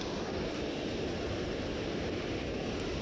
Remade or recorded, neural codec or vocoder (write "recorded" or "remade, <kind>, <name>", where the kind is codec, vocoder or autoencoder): recorded